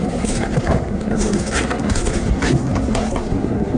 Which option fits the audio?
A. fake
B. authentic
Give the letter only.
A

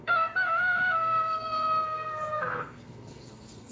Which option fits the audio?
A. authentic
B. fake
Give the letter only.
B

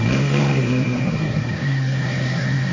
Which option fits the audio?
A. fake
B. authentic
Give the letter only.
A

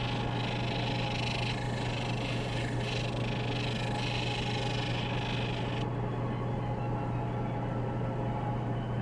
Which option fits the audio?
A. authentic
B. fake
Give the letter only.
A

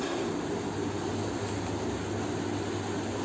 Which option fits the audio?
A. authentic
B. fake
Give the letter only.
A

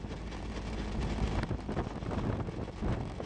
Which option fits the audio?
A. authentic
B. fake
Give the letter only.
A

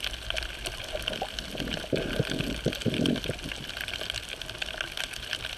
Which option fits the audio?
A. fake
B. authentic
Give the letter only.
B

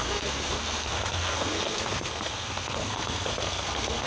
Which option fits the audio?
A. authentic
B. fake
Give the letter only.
B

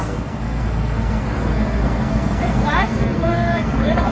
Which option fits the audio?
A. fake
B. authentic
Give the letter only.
A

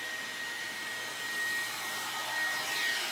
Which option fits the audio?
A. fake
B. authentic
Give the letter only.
B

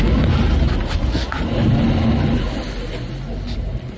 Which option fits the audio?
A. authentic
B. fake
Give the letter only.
A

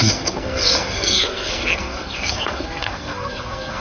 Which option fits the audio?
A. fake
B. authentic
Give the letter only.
A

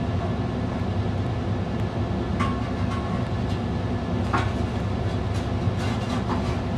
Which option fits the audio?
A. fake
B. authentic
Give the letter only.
B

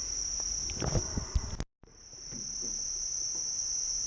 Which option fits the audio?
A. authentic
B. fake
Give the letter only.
A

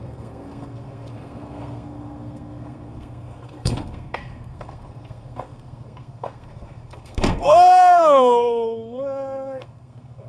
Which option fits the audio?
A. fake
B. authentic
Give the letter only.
A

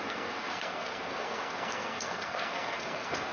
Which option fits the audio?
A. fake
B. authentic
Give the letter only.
A